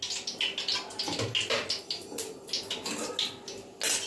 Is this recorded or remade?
recorded